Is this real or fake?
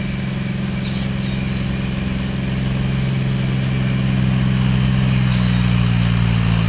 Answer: real